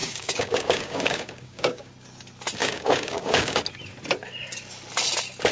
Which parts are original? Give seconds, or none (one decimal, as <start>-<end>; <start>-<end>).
1.9-2.6; 3.6-5.5